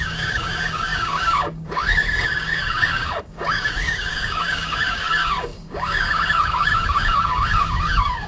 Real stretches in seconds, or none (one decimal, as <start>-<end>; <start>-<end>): none